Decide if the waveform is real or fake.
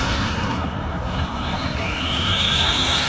fake